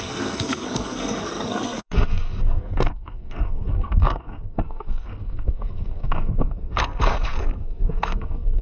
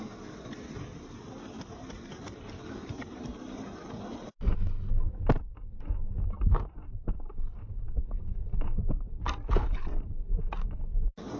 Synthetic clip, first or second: first